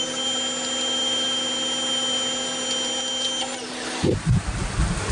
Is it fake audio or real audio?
real